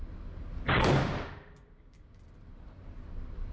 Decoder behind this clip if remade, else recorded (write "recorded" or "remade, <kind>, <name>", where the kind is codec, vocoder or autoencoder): recorded